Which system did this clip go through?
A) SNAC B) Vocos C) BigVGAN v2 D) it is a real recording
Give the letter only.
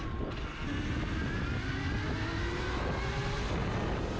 D